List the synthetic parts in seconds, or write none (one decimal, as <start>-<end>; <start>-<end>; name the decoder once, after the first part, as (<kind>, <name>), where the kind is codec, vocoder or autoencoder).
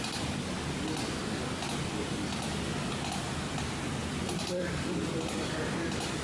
4.0-5.3 (vocoder, BigVGAN v2)